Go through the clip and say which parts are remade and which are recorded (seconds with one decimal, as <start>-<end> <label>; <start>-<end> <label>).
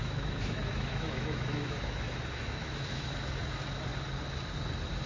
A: 0.0-3.1 remade; 3.1-5.1 recorded